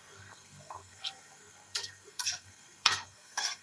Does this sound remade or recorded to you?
remade